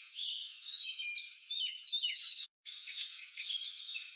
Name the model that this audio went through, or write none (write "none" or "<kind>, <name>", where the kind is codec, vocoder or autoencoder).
autoencoder, DAC-VAE